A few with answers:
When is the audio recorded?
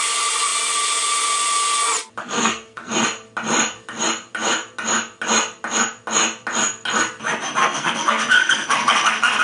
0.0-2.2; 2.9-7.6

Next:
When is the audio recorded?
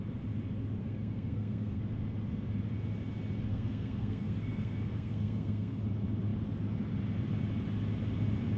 0.0-0.8; 1.8-3.5; 5.8-8.6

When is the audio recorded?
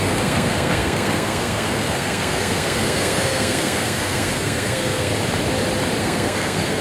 5.1-6.0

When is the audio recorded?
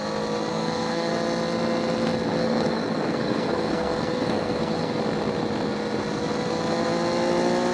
0.0-0.5; 1.1-2.4; 5.0-7.7